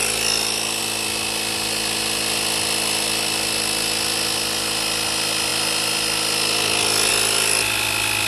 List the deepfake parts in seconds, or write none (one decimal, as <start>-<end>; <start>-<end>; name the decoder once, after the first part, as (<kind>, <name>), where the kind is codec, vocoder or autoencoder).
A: none